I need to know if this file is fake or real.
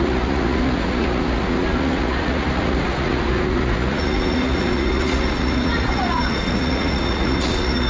fake